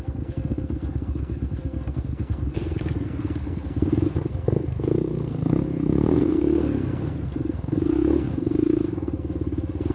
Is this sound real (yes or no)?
no